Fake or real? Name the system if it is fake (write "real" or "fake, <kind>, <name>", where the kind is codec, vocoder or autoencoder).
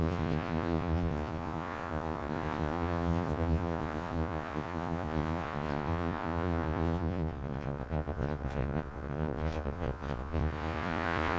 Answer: fake, vocoder, Vocos